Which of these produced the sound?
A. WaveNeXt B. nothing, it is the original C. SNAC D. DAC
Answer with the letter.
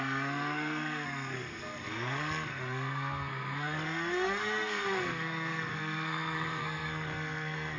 C